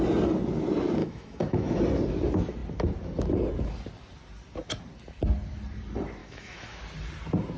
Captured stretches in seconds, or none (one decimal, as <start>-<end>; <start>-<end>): 0.0-1.0; 1.8-6.2; 6.8-7.6